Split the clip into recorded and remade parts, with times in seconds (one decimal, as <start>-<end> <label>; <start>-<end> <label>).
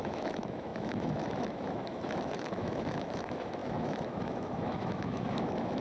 0.0-5.8 remade